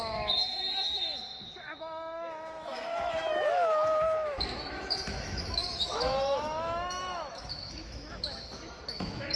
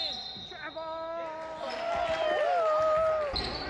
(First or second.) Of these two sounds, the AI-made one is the first